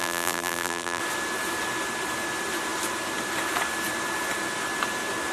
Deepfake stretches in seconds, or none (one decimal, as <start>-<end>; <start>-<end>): 0.0-1.0